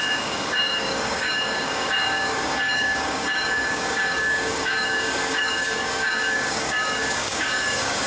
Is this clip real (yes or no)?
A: no